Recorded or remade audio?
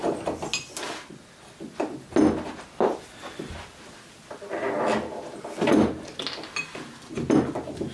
recorded